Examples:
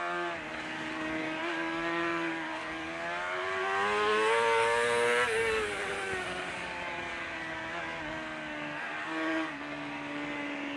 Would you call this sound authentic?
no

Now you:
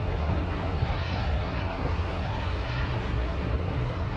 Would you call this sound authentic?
no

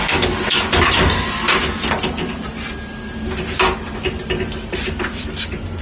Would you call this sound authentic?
yes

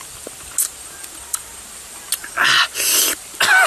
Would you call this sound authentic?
yes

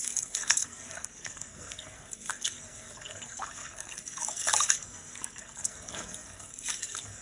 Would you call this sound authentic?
no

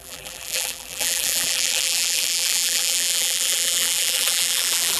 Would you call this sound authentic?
no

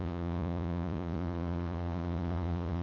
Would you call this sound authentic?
no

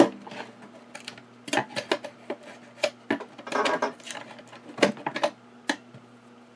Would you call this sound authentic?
yes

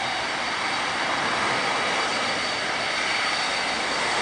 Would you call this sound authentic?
yes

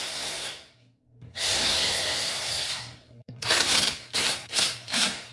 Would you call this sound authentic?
no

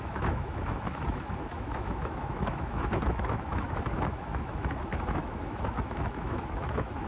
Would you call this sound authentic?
no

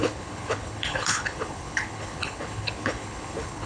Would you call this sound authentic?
no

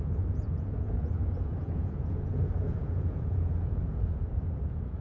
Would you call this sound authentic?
no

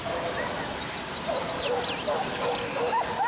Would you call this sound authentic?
yes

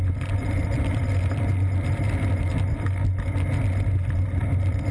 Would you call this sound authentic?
yes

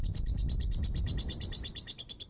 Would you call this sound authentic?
yes